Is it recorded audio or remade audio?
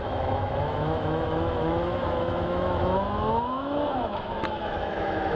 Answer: remade